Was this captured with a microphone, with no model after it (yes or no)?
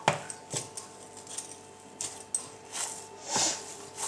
yes